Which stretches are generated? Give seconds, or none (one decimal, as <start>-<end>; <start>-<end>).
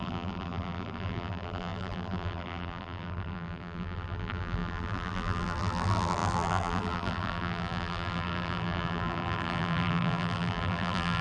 0.0-11.2